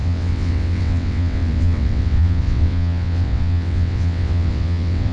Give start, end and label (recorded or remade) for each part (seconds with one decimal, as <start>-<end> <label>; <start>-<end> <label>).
0.0-5.1 remade